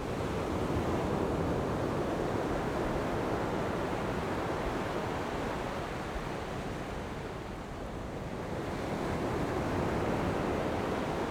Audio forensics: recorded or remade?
recorded